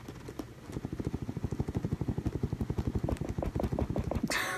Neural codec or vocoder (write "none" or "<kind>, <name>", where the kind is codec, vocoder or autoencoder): none